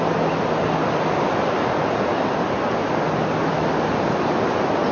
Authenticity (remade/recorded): recorded